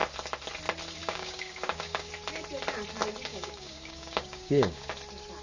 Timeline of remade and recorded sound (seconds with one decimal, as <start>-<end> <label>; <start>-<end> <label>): 0.0-1.0 recorded; 1.0-2.1 remade; 2.1-3.3 recorded; 3.3-4.9 remade; 4.9-5.4 recorded